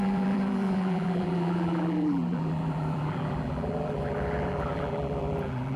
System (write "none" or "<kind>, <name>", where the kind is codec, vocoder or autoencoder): vocoder, BigVGAN v2